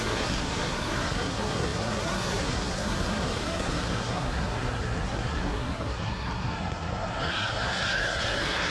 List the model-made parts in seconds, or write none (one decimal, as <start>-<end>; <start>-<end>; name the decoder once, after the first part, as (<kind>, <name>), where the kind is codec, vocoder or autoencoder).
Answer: 0.0-8.7 (codec, SNAC)